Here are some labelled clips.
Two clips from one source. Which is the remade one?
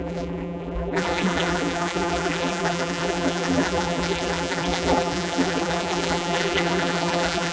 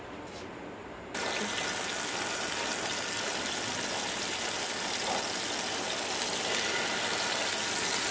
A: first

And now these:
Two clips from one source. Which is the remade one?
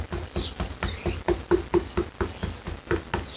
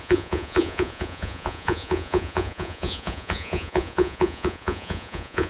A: second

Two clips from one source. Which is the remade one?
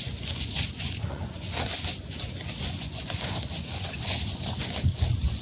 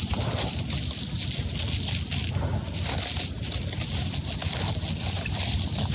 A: first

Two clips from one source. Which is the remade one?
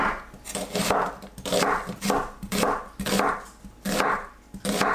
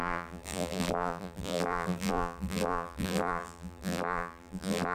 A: second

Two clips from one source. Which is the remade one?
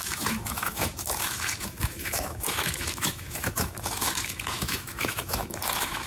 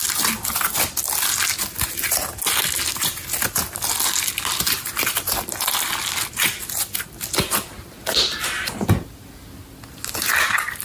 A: first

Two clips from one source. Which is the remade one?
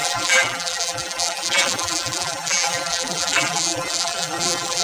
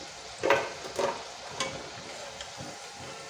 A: first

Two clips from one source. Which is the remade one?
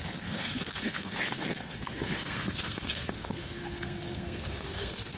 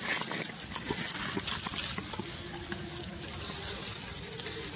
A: first